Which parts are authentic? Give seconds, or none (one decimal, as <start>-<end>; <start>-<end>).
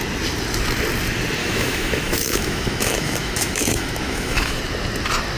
0.0-1.4; 4.6-5.4